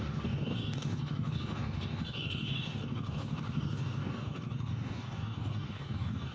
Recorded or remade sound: remade